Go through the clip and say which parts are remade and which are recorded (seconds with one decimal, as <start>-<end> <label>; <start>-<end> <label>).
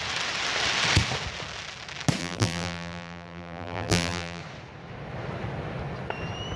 0.0-2.2 recorded; 2.2-4.4 remade; 4.4-6.6 recorded